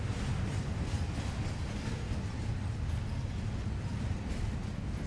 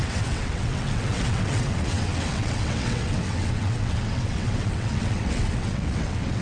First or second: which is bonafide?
first